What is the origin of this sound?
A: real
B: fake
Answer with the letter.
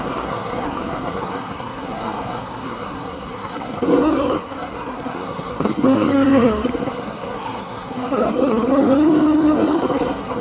B